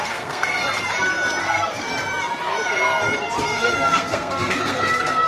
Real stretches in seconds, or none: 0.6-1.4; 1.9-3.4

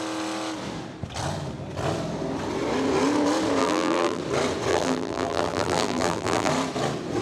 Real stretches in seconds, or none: 0.0-3.6; 4.2-4.7; 6.5-7.2

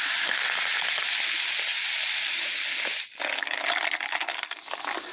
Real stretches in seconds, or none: 0.0-5.1